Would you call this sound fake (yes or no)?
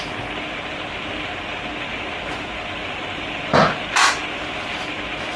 no